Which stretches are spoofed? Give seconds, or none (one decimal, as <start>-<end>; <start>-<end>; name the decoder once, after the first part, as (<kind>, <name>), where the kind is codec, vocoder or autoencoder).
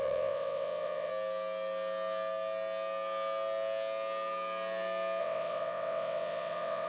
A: 0.0-1.1 (vocoder, WaveNeXt); 5.2-6.9